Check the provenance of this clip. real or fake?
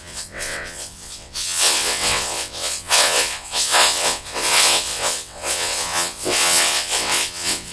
fake